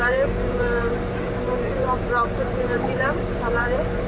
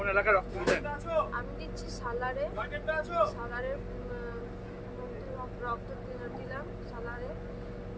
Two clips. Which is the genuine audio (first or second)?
second